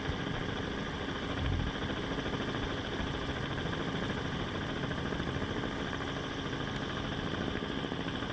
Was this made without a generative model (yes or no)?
yes